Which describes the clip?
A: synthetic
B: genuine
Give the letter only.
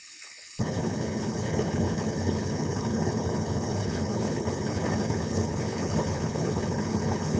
A